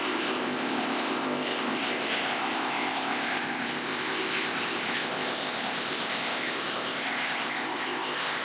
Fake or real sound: fake